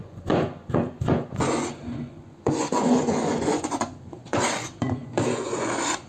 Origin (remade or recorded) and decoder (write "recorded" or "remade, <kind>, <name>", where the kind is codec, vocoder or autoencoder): remade, vocoder, Vocos